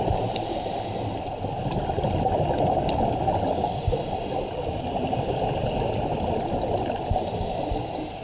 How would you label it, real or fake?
real